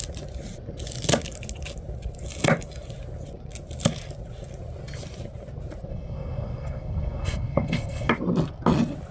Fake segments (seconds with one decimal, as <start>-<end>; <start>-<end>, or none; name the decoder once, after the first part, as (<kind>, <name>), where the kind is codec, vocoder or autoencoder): 5.9-8.1 (codec, SNAC)